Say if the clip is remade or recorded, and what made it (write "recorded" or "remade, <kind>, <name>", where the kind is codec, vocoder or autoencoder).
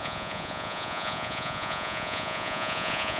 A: remade, vocoder, Vocos